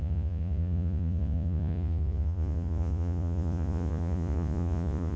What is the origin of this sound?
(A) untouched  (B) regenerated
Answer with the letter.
B